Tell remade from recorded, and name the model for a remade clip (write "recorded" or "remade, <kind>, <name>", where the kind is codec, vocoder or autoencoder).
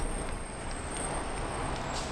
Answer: recorded